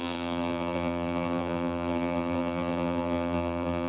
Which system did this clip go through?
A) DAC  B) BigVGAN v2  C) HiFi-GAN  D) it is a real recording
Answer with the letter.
B